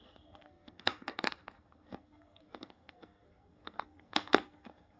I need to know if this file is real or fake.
fake